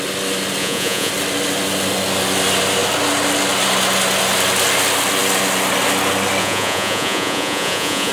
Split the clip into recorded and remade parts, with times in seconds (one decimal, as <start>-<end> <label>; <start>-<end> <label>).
0.0-0.6 recorded; 0.6-1.1 remade; 1.1-6.4 recorded; 6.4-8.1 remade